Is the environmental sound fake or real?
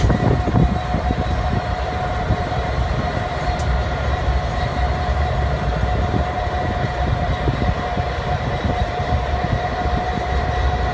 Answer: fake